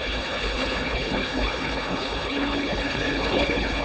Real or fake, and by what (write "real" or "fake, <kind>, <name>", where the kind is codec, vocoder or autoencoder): fake, codec, HILCodec